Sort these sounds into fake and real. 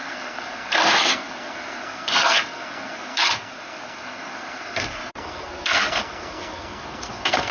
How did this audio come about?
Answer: fake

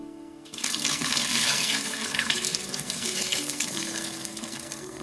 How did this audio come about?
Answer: fake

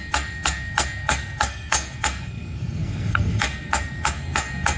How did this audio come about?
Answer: fake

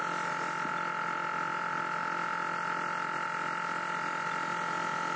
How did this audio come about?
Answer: real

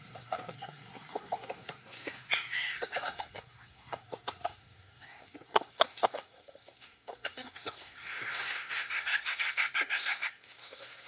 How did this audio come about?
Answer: fake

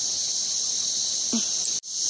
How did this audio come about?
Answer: real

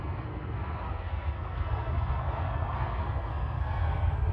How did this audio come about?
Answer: fake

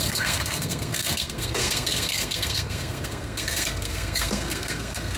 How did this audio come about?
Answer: fake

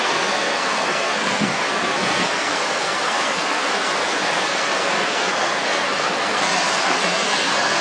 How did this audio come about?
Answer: fake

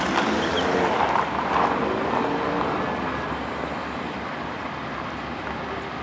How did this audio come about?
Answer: real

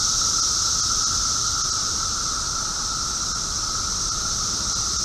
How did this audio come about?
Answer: real